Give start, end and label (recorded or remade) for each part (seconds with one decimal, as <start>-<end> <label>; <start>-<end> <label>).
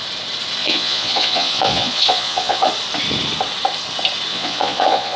0.0-0.6 recorded; 0.6-2.7 remade; 2.7-4.3 recorded; 4.3-5.2 remade